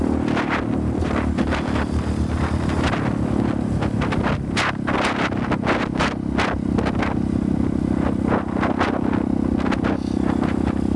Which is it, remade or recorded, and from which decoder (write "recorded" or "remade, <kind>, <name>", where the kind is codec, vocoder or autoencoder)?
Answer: recorded